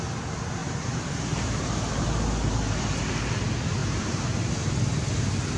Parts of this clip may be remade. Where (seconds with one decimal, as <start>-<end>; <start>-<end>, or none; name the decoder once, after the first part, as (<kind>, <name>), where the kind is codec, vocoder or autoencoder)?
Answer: 0.6-1.9 (vocoder, BigVGAN v2); 3.8-4.5